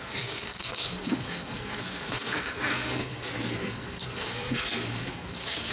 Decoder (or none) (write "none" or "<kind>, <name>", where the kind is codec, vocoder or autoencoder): codec, SNAC